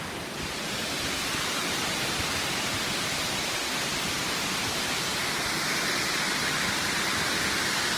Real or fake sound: real